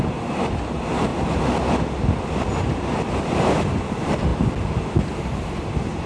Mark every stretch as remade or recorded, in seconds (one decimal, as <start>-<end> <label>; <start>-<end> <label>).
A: 0.0-1.1 remade; 1.1-3.2 recorded; 3.2-4.3 remade; 4.3-5.1 recorded; 5.1-6.1 remade